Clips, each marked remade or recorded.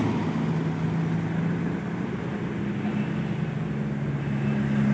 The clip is recorded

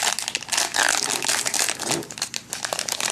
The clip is recorded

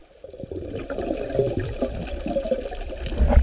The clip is recorded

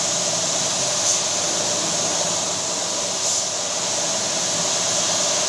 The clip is recorded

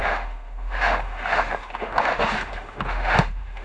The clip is remade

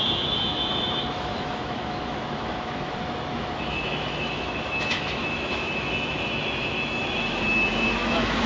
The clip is remade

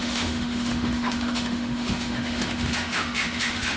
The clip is remade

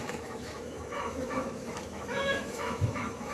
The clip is remade